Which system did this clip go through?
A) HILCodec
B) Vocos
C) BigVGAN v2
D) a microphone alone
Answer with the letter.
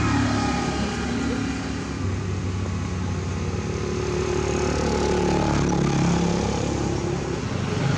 D